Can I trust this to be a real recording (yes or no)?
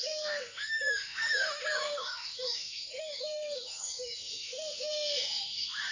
no